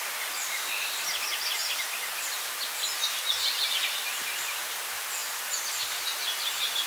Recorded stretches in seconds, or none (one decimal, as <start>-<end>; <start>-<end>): 0.0-6.9